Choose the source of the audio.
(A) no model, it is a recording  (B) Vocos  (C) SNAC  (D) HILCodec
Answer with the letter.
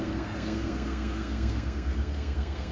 C